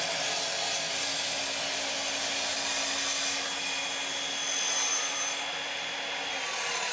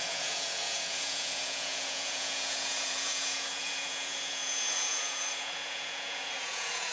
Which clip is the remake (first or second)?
second